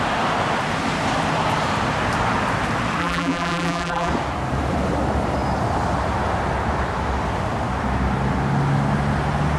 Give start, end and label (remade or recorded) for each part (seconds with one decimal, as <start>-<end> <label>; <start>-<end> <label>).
0.0-3.0 recorded; 3.0-4.1 remade; 4.1-9.6 recorded